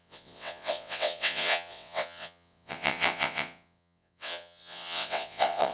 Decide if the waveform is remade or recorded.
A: remade